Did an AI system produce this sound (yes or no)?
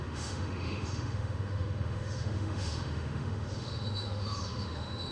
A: yes